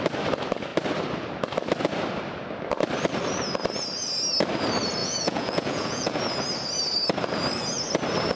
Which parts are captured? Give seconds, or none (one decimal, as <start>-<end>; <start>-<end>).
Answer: 0.0-5.0; 6.2-8.4